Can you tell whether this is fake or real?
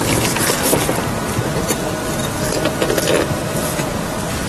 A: real